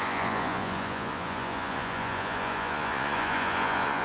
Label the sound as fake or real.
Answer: fake